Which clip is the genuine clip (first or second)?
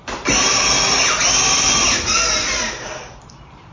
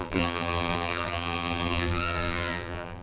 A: first